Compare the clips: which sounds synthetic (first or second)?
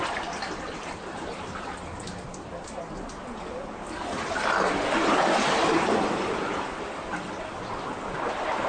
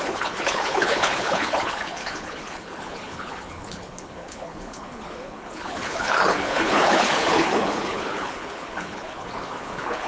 second